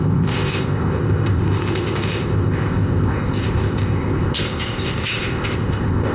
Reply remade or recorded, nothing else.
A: remade